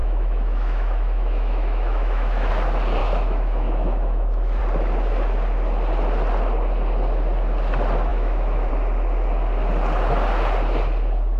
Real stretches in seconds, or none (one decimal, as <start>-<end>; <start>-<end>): 2.5-3.0; 4.6-8.1; 8.7-11.4